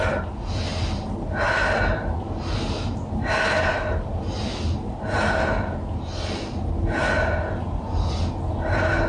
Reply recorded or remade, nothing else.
recorded